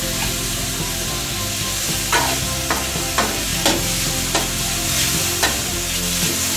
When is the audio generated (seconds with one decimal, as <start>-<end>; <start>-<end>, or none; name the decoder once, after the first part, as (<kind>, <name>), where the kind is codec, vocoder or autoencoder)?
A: none